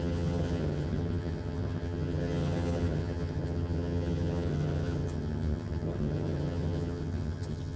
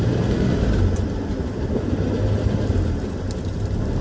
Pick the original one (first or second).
second